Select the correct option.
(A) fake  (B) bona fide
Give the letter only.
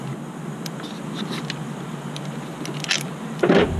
B